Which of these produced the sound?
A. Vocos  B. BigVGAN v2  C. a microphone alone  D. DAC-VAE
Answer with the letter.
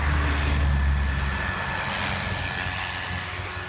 C